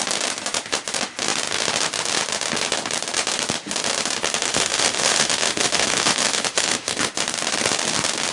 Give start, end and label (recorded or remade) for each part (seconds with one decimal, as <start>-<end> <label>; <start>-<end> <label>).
0.0-4.4 recorded; 4.4-7.1 remade; 7.1-8.3 recorded